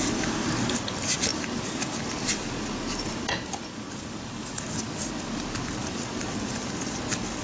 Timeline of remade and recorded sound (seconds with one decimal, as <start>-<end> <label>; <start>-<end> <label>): 0.0-7.4 recorded